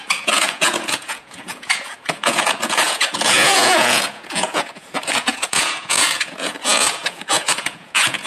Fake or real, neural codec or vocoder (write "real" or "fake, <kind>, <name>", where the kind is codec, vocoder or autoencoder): fake, vocoder, Vocos